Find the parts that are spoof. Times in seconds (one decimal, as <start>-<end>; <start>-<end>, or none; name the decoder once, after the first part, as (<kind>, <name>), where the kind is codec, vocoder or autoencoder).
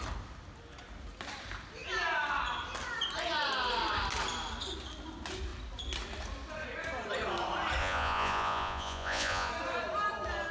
7.8-9.5 (vocoder, Vocos)